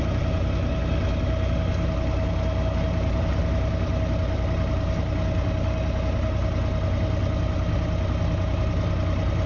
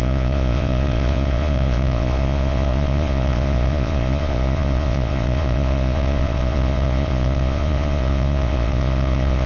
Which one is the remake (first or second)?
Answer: second